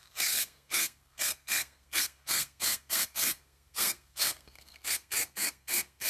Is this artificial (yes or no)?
yes